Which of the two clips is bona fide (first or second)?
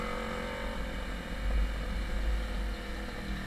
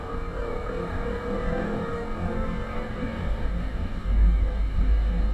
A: first